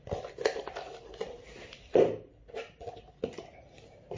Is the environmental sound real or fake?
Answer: real